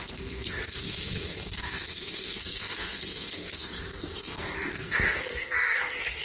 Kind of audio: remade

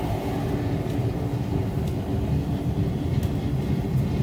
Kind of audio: recorded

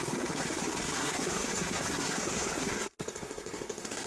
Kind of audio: remade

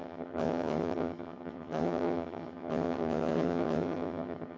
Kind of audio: remade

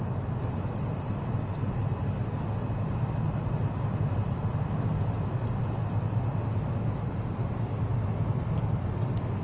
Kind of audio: recorded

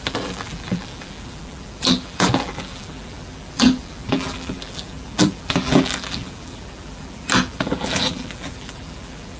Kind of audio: remade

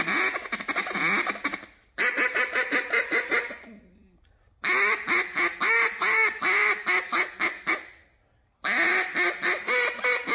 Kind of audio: recorded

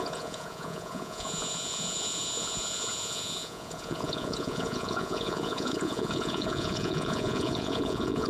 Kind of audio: remade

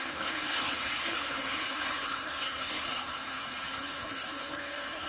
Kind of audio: remade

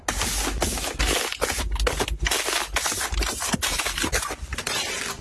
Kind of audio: recorded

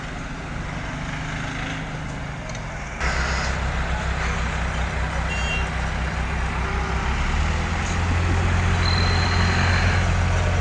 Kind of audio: recorded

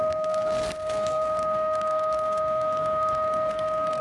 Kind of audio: remade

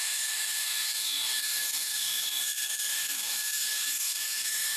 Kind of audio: remade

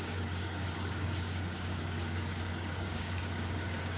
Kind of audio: remade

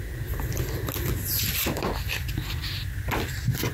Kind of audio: recorded